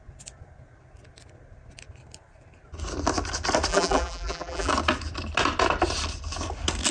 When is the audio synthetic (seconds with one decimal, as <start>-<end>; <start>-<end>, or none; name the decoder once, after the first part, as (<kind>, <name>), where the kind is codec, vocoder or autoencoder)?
3.7-4.7 (vocoder, BigVGAN v2)